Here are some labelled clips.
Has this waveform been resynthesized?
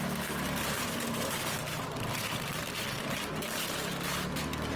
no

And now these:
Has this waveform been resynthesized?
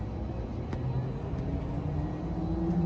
no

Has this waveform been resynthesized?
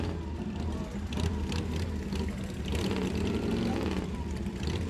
no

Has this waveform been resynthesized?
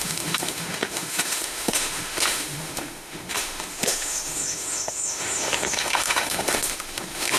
yes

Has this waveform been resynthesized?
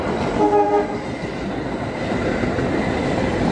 no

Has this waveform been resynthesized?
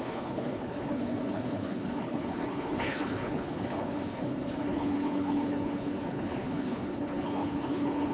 yes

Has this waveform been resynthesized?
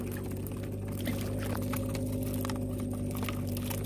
no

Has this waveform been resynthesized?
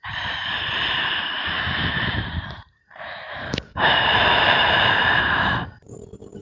yes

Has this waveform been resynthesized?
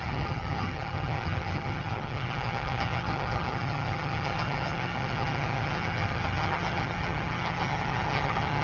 yes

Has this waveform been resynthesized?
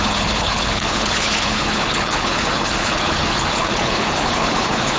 yes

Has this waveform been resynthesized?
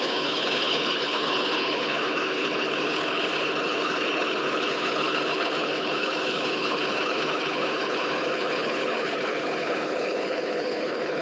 yes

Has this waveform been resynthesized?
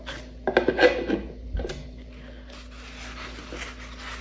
no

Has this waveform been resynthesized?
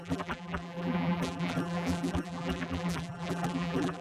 yes